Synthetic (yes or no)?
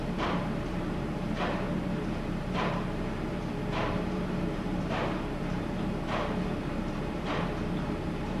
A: yes